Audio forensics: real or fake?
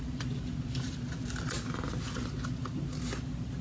real